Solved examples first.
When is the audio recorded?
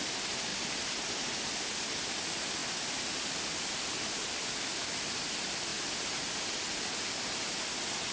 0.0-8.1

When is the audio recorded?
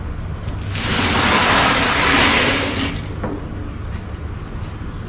0.0-5.1